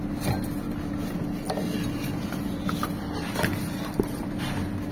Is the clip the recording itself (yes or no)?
yes